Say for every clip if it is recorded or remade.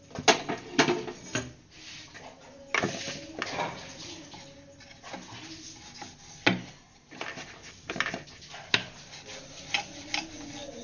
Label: recorded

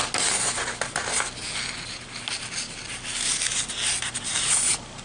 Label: recorded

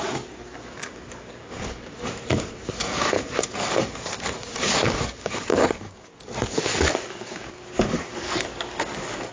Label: remade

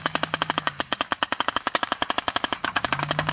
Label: remade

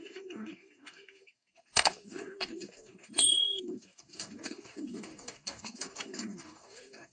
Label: remade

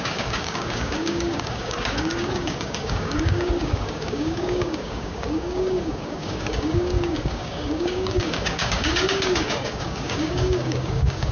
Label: remade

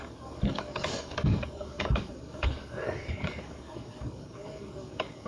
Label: remade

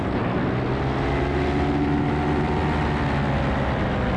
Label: recorded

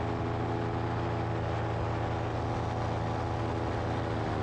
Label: recorded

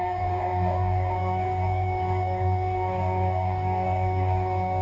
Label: remade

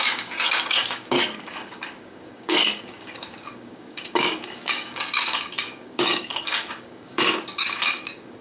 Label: remade